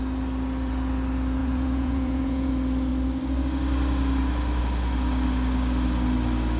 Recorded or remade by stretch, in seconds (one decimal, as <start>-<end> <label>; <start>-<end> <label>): 0.0-1.4 recorded; 1.4-2.5 remade; 2.5-6.6 recorded